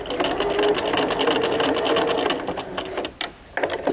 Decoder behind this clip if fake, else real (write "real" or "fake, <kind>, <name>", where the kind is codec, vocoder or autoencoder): real